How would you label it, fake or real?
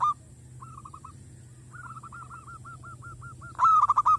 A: real